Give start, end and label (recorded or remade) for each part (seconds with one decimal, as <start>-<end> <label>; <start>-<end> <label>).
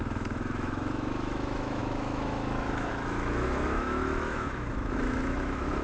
0.0-5.8 remade